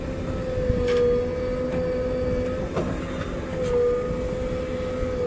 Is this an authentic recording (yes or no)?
yes